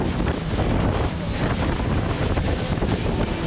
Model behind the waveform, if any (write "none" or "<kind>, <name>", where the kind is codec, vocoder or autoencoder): vocoder, BigVGAN v2